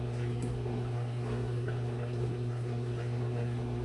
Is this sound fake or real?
fake